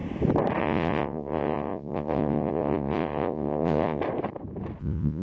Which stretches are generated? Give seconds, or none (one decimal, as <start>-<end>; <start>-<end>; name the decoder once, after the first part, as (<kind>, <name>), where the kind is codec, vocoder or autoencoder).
0.6-4.0 (vocoder, Vocos); 4.8-5.2